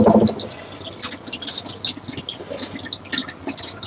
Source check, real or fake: real